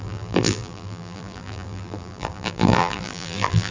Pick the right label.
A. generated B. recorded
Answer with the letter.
A